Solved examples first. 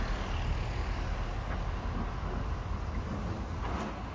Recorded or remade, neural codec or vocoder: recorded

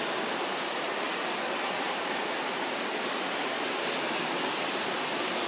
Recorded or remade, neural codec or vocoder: recorded